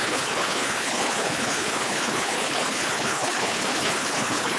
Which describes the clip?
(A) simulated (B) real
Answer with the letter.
A